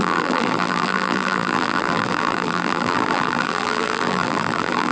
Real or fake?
fake